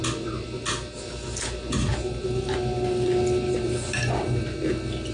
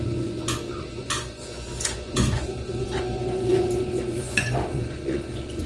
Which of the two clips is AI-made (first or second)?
second